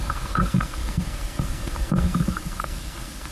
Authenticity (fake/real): fake